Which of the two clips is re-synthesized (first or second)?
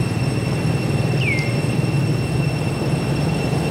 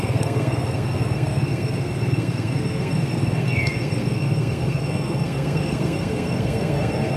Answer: second